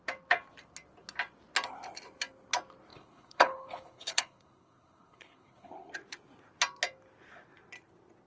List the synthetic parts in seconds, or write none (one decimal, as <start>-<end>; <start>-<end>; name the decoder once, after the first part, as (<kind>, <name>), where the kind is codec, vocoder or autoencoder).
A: 2.9-5.9 (codec, HILCodec)